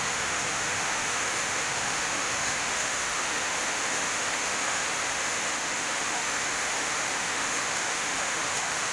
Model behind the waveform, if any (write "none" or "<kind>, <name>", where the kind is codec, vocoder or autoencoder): autoencoder, DAC-VAE